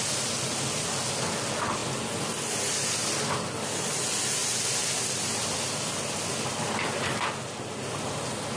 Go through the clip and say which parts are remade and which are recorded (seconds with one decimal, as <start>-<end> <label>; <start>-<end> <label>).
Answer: 0.0-8.6 recorded